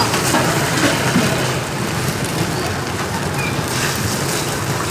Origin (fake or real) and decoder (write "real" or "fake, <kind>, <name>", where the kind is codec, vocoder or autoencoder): real